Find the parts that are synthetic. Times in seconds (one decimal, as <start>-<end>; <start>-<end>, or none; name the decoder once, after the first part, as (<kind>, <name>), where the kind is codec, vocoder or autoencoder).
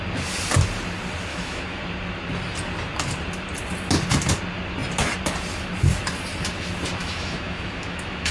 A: 1.3-1.8 (autoencoder, DAC-VAE); 7.0-8.3